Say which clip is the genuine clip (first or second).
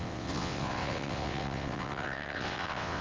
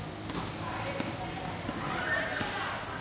second